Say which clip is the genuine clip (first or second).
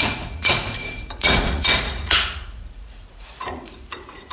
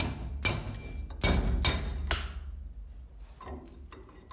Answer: second